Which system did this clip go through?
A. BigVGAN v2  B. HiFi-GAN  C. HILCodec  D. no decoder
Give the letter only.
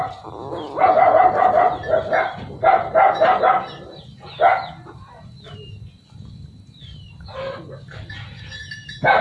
D